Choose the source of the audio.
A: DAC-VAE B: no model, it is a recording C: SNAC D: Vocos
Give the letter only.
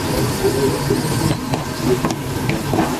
B